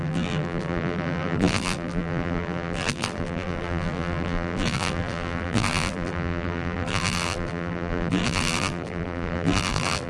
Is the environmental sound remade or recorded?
remade